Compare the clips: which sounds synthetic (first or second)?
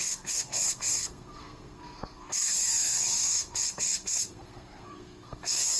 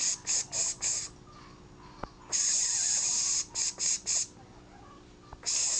first